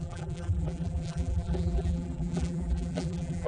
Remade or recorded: remade